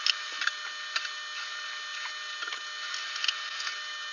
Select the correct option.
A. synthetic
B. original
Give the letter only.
B